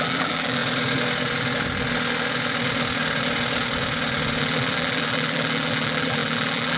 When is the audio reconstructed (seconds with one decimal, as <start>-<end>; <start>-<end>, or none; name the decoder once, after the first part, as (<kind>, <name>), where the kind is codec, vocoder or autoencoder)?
0.0-0.6 (vocoder, BigVGAN v2); 4.4-6.8